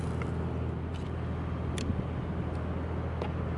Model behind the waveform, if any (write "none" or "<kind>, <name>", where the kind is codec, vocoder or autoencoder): none